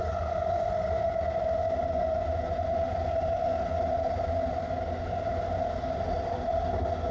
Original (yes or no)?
yes